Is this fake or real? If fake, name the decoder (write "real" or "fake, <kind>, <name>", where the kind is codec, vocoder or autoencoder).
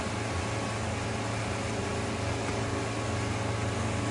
real